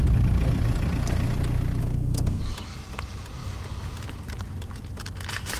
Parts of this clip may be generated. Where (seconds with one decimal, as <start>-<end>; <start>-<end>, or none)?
1.8-2.4